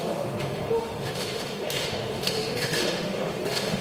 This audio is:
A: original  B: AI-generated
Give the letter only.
B